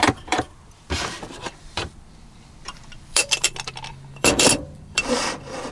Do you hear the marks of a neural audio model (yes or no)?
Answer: yes